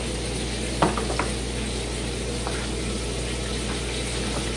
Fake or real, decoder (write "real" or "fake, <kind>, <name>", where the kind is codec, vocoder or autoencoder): real